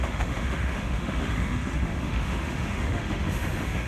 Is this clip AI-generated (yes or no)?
yes